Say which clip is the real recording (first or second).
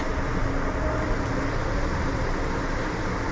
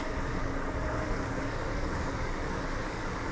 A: first